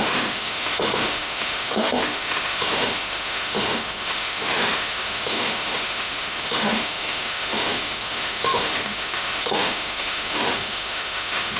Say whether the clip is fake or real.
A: fake